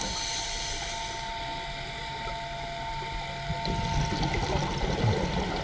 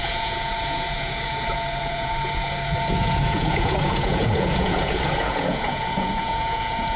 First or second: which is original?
first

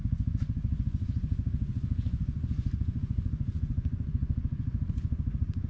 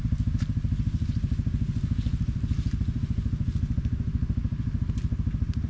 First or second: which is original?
second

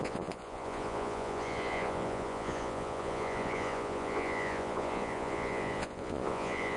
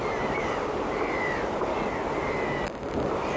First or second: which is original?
second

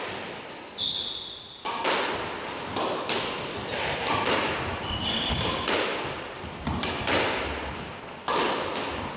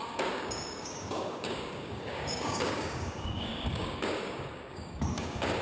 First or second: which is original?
first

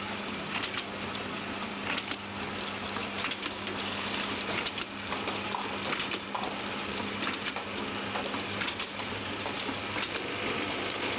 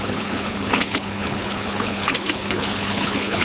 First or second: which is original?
first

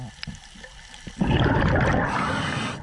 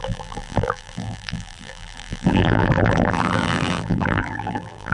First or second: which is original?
first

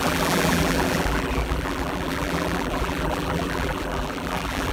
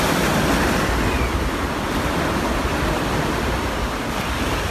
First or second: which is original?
second